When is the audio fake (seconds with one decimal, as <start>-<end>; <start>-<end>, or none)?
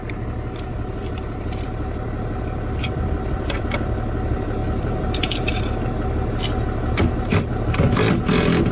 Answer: 0.7-3.8; 4.6-5.6